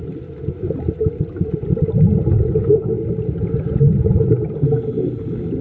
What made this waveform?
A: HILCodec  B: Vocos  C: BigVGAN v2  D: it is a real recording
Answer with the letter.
D